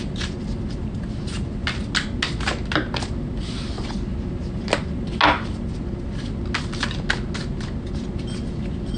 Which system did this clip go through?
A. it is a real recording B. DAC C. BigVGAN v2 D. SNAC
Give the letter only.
A